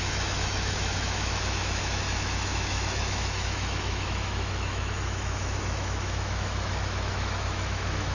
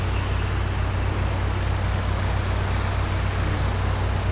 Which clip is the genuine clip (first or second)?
second